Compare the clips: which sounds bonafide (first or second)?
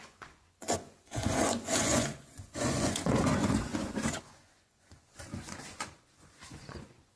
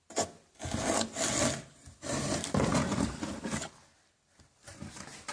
second